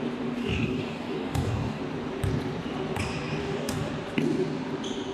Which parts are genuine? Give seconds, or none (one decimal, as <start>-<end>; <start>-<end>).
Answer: 0.0-0.4; 1.8-3.4; 3.9-5.1